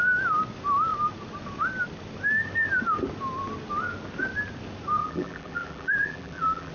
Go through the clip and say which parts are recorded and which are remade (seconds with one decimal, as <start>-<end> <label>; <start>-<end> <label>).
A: 0.0-5.0 recorded; 5.0-6.7 remade